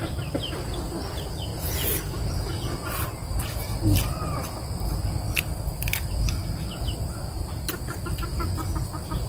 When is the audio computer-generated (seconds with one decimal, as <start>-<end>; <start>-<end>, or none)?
0.0-1.5; 5.4-6.4; 7.0-8.3